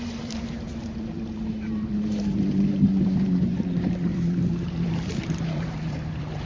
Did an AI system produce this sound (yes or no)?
yes